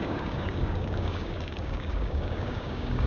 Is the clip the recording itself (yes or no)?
no